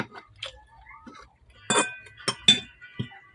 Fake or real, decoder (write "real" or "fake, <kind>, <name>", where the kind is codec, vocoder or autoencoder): real